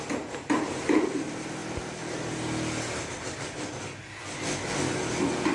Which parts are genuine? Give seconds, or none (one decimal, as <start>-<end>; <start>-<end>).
0.0-5.5